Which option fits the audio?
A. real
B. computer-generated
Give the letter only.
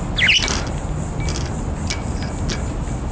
A